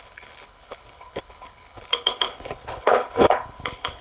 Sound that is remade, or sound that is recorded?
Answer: remade